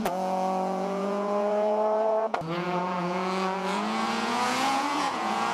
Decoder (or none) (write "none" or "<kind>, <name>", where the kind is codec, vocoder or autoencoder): vocoder, Vocos